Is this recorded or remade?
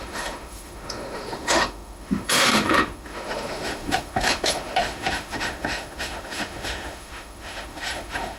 remade